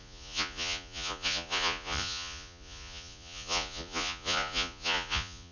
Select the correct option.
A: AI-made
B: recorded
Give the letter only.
A